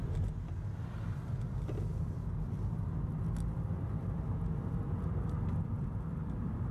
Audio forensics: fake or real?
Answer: real